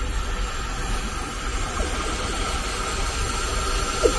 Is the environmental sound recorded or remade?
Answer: recorded